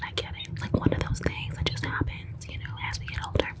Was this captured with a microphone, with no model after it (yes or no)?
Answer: yes